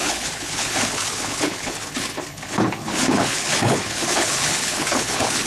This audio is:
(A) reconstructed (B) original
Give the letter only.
A